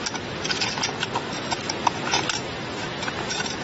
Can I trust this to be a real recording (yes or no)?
yes